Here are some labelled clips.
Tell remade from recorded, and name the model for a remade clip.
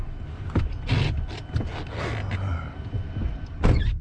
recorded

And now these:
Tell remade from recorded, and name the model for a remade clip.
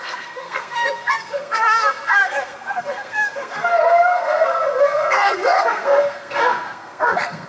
remade, codec, SNAC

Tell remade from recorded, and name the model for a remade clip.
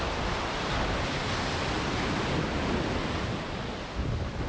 recorded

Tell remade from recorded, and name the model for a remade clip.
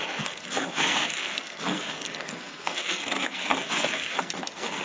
remade, codec, SNAC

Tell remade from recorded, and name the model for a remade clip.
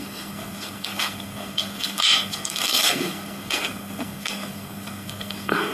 remade, codec, SNAC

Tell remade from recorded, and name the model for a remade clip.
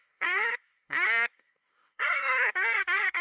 remade, codec, SNAC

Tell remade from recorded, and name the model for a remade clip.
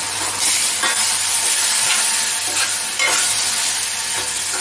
recorded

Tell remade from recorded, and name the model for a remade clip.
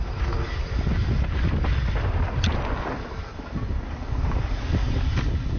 recorded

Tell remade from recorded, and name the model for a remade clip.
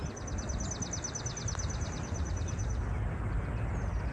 recorded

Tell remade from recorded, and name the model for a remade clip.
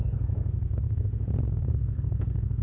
remade, codec, SNAC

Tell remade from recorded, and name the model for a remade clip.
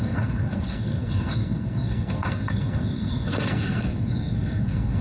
remade, codec, SNAC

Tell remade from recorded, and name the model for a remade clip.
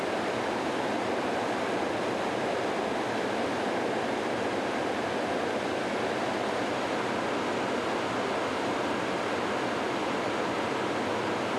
recorded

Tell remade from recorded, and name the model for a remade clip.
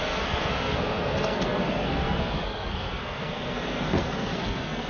remade, codec, SNAC